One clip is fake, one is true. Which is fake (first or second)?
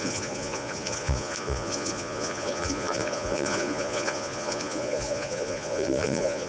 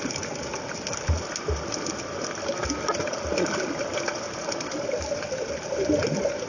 first